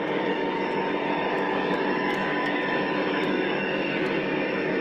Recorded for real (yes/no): no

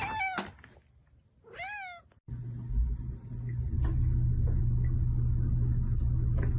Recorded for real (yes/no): yes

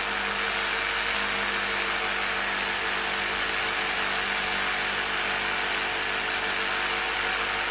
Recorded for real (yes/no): yes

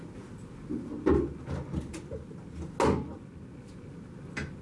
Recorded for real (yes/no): yes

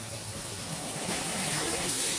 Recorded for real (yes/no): no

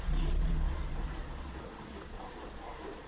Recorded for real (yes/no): no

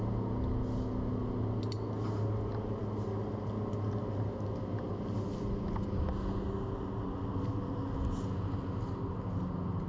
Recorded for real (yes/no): yes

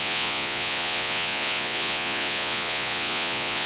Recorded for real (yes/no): no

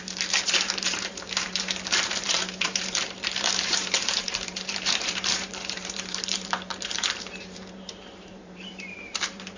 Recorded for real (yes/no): no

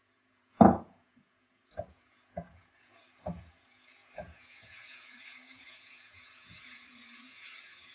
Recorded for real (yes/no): no